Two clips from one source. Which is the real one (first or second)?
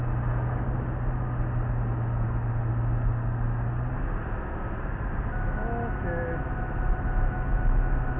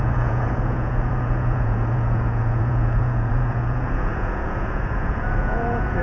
first